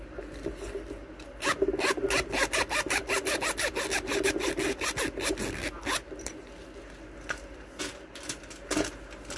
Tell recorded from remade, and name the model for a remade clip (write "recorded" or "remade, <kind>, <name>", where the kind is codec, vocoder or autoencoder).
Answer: recorded